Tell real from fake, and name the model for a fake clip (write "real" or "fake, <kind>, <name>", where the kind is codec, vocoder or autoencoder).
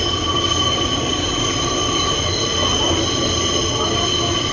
real